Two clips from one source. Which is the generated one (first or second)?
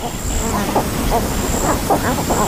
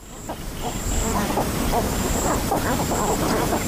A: second